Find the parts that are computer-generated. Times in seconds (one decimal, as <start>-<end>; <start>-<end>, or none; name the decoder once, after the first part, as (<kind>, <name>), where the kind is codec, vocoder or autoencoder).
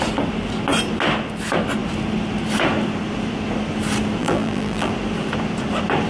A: 4.2-4.9 (vocoder, BigVGAN v2)